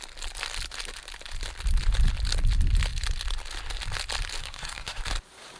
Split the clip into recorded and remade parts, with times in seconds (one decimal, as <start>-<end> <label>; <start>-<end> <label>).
0.0-4.4 recorded; 4.4-5.0 remade; 5.0-5.6 recorded